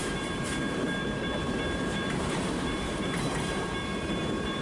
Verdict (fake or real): fake